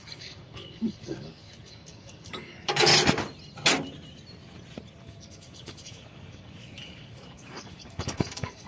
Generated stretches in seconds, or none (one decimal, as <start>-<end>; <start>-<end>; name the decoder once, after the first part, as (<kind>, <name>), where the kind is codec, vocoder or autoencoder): 0.0-2.9 (codec, DAC); 5.0-8.7

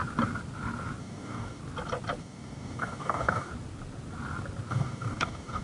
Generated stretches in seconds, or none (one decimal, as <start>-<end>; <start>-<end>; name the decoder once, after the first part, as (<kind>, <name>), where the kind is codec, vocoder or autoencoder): 1.0-1.6 (codec, DAC); 2.2-3.5; 4.7-5.6

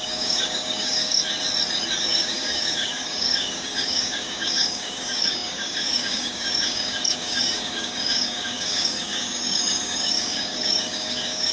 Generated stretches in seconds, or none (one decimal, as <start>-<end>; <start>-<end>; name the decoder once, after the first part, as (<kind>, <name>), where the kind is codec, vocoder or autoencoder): 0.0-1.2 (codec, DAC); 2.0-11.5

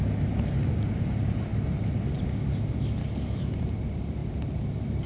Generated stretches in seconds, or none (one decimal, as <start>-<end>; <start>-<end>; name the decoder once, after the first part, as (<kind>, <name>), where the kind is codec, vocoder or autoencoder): 3.0-3.6 (codec, DAC)

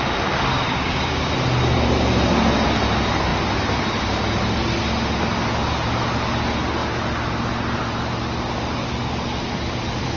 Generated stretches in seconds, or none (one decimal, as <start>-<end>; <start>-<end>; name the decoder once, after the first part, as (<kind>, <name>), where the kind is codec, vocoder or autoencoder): 0.6-1.3 (codec, DAC)